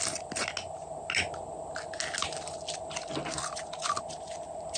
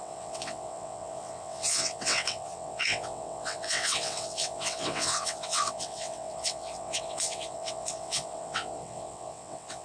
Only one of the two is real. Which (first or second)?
first